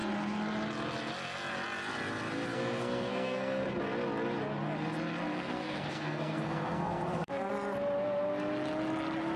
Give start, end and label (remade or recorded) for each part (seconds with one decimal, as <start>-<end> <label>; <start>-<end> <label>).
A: 0.0-2.5 recorded; 2.5-3.6 remade; 3.6-5.3 recorded; 5.3-7.5 remade; 7.5-9.4 recorded